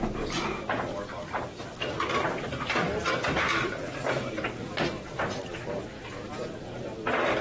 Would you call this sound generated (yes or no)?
no